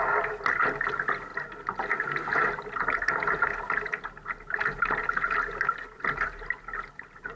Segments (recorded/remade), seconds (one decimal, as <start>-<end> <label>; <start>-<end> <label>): 0.0-7.4 recorded